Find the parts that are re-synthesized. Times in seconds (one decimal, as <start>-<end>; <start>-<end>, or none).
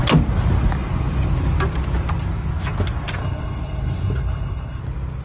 3.2-4.8